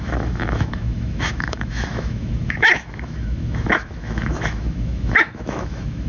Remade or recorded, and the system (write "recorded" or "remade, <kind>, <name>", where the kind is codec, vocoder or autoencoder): remade, autoencoder, DAC-VAE